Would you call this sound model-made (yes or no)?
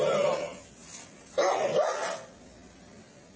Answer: no